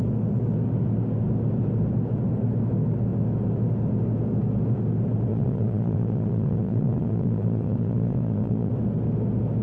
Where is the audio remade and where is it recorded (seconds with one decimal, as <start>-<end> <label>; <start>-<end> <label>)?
0.0-5.3 recorded; 5.3-8.7 remade; 8.7-9.6 recorded